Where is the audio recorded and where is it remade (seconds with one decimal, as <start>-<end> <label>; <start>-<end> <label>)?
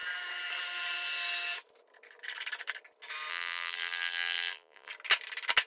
0.0-3.3 recorded; 3.3-4.9 remade; 4.9-5.7 recorded